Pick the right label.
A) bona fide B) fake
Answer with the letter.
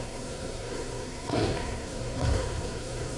B